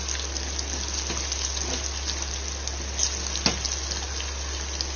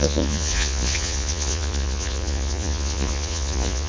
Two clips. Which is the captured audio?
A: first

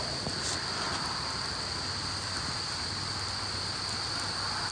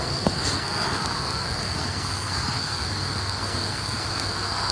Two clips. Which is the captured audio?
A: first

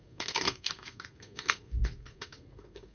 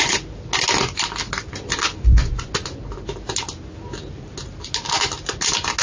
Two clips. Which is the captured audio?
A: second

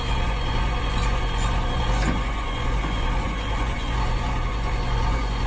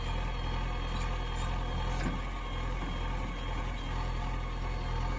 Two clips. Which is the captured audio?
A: second